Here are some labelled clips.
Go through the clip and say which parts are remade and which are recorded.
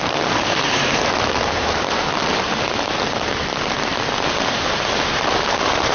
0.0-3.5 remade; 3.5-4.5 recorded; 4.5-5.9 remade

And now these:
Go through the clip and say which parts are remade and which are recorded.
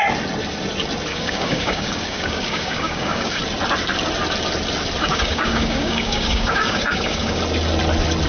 0.0-1.1 recorded; 1.1-3.4 remade; 3.4-5.0 recorded; 5.0-7.4 remade; 7.4-8.3 recorded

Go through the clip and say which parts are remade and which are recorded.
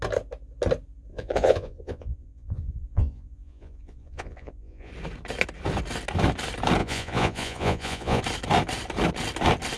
0.0-1.1 recorded; 1.1-4.9 remade; 4.9-6.8 recorded; 6.8-8.2 remade; 8.2-9.8 recorded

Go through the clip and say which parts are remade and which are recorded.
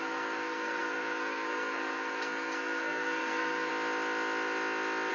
0.0-3.7 remade; 3.7-5.1 recorded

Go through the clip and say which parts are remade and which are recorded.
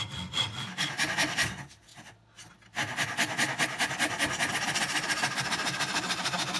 0.0-6.6 recorded